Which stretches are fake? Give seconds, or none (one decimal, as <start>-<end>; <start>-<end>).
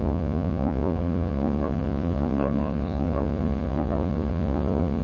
0.0-5.0